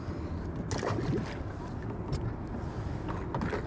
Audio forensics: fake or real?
real